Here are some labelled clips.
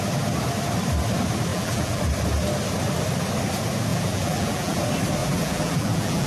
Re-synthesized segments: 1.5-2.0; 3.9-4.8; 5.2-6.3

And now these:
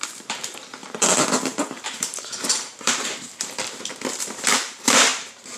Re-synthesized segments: 0.0-5.6

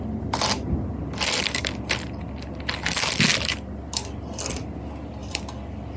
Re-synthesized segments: none

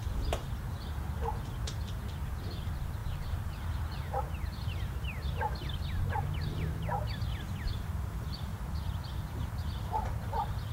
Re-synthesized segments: 3.0-3.5; 8.5-10.7

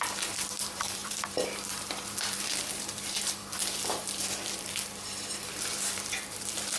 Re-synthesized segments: 0.0-6.8

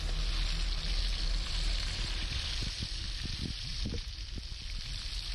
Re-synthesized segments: 1.1-4.3

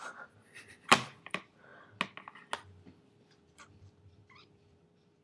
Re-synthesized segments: 0.0-1.7; 3.1-5.2